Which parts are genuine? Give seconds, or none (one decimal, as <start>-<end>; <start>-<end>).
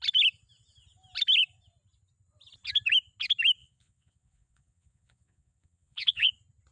0.0-3.6; 6.3-6.7